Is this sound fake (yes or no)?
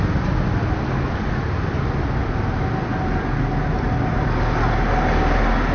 no